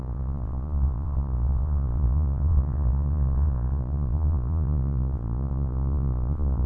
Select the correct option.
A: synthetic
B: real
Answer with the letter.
A